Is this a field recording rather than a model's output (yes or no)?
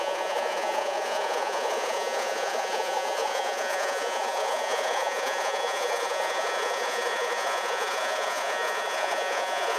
no